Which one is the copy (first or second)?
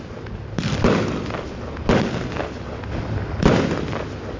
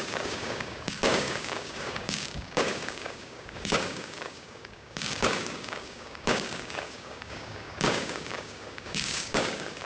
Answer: second